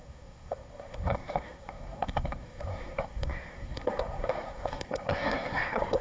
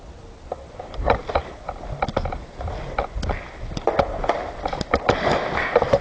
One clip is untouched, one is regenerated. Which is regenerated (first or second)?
first